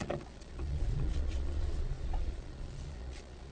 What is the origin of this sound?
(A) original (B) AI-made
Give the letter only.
B